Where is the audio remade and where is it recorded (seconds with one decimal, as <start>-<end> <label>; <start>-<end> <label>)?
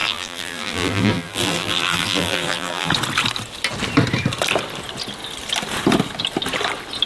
0.0-2.9 remade; 2.9-7.1 recorded